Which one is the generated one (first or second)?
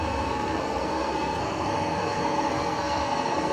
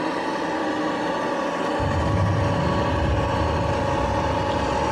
first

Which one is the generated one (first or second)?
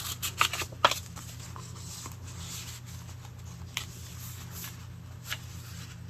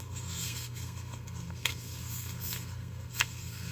second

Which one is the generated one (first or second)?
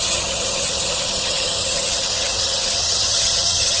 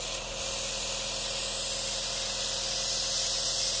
first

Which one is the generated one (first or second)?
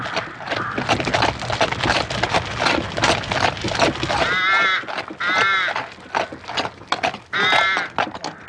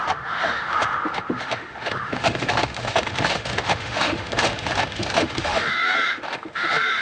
second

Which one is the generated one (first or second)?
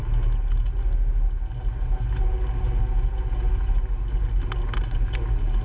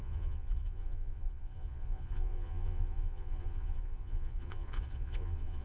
second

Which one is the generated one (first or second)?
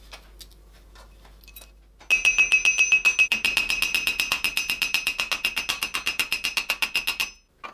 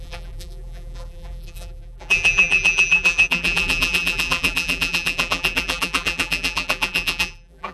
second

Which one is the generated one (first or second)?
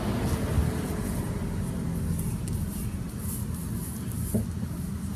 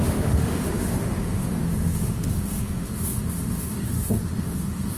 second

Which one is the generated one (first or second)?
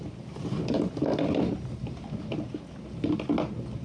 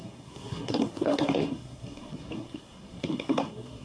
second